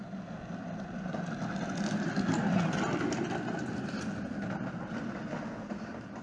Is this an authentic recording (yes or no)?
yes